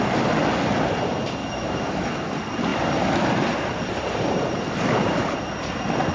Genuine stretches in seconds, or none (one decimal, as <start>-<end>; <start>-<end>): 0.0-1.4; 2.3-6.1

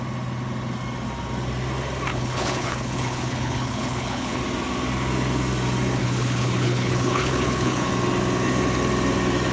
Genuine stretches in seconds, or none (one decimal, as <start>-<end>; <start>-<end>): 0.0-2.1; 4.4-6.0; 7.9-9.5

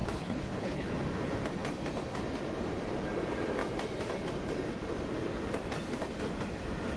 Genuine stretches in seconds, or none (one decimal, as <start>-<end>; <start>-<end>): 0.9-7.0

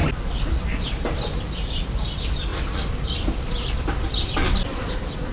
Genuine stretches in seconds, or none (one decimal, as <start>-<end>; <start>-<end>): 0.0-5.3